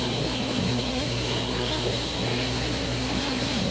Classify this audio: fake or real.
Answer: fake